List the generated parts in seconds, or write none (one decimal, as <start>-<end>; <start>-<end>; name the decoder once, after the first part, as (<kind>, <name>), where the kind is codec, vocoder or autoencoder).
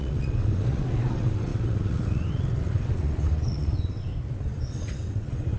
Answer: 0.0-4.1 (vocoder, WaveNeXt); 4.7-5.6